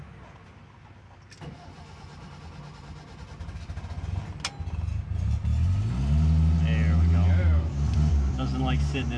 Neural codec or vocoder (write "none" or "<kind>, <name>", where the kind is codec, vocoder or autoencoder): none